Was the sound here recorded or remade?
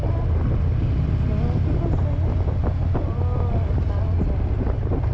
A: recorded